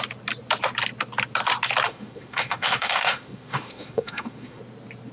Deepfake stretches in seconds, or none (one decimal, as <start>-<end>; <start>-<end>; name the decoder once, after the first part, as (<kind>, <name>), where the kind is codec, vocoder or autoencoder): 1.9-4.6 (autoencoder, DAC-VAE)